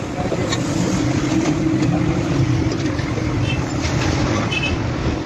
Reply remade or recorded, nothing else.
recorded